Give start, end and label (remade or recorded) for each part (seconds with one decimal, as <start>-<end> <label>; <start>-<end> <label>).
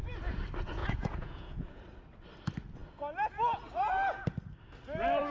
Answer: 0.0-0.8 recorded; 0.8-1.8 remade; 1.8-5.3 recorded